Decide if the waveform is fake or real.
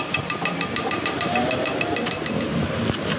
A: fake